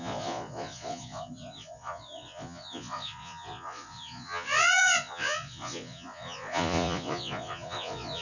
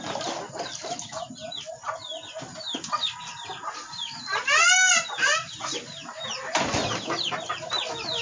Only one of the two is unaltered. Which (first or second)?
second